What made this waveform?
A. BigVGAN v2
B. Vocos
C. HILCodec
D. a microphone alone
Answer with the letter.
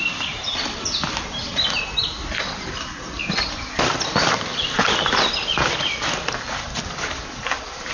D